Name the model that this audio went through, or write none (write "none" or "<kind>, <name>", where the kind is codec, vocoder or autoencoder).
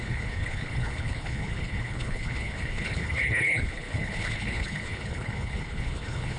codec, HILCodec